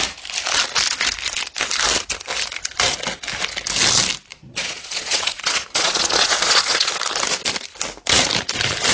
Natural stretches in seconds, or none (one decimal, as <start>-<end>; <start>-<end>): 0.0-4.3; 7.0-8.9

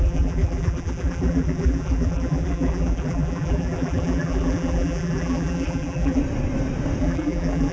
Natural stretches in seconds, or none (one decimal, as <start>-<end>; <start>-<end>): 6.2-7.0

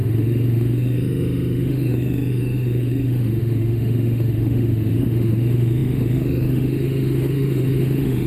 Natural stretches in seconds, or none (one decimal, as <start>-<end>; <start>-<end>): none

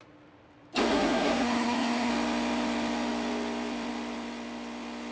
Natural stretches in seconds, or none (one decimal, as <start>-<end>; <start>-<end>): 0.0-0.9; 2.1-5.1

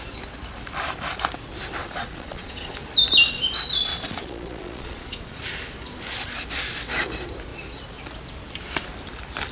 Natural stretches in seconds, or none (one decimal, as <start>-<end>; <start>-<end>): 0.0-1.8; 2.7-3.9; 5.4-9.5

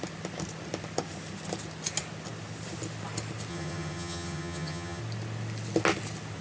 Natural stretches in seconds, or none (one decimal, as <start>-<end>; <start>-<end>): 0.0-3.5; 5.0-6.4